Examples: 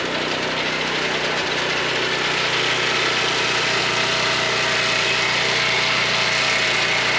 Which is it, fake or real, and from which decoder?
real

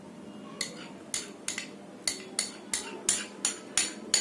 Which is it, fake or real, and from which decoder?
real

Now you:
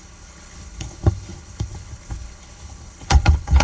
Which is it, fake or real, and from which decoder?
fake, codec, HILCodec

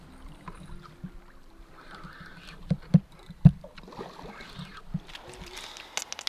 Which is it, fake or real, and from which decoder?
real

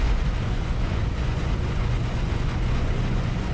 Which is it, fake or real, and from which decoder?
fake, vocoder, Vocos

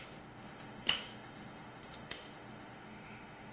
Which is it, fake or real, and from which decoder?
fake, autoencoder, DAC-VAE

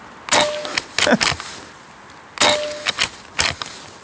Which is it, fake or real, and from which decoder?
real